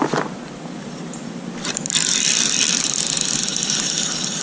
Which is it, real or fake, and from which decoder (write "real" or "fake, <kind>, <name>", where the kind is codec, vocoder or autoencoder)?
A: real